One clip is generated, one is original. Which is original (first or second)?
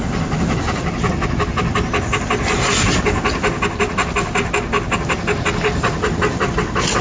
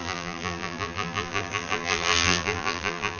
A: first